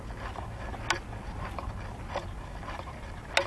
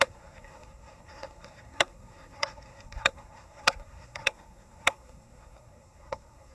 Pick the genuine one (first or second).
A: first